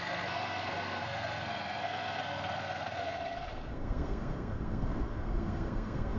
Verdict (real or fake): fake